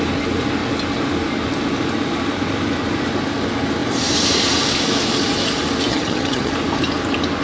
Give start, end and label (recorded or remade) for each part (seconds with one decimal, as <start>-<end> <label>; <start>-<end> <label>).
0.0-5.9 recorded; 5.9-6.5 remade; 6.5-7.4 recorded